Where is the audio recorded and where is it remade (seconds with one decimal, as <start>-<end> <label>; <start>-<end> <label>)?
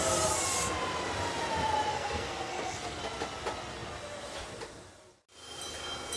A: 0.0-1.9 recorded; 1.9-3.0 remade; 3.0-6.2 recorded